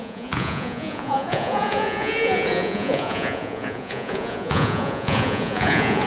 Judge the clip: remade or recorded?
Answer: remade